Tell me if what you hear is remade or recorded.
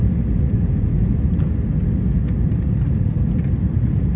recorded